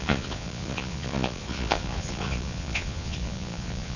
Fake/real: fake